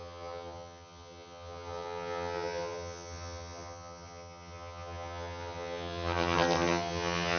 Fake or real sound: fake